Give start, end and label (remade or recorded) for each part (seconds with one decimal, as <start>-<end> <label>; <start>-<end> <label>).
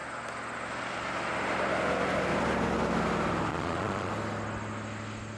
0.0-3.5 recorded; 3.5-4.1 remade; 4.1-5.4 recorded